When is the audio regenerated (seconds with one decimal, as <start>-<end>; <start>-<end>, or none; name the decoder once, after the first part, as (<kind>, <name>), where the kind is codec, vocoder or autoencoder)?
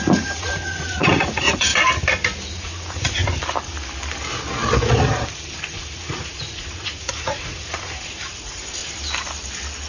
0.0-1.7 (vocoder, Vocos); 2.5-3.2; 5.7-8.8